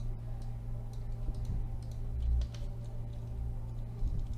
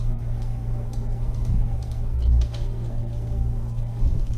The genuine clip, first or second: first